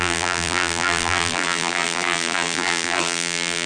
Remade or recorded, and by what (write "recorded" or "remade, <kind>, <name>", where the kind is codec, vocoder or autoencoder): remade, vocoder, BigVGAN v2